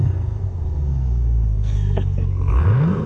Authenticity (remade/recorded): remade